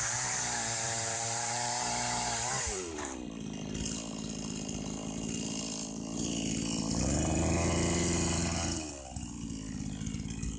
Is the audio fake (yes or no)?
yes